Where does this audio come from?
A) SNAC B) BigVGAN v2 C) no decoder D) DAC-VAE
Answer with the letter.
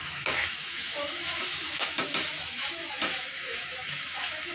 D